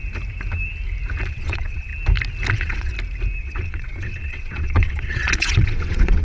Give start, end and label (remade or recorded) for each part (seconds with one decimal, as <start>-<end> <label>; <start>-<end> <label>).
0.0-1.3 recorded; 1.3-1.9 remade; 1.9-2.5 recorded; 2.5-2.9 remade; 2.9-3.4 recorded; 3.4-6.2 remade